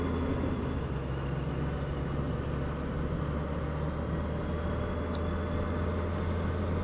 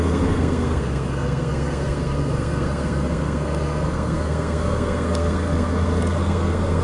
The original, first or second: first